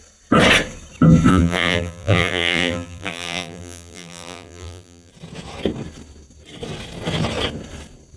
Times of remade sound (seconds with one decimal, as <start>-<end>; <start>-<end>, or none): 1.3-5.1